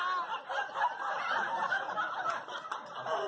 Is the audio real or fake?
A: real